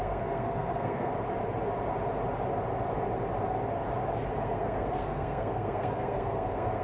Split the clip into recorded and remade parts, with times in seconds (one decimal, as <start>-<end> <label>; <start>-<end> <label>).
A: 0.0-1.1 remade; 1.1-4.3 recorded; 4.3-6.8 remade